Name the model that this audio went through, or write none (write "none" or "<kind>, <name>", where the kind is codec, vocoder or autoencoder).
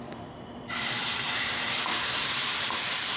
vocoder, BigVGAN v2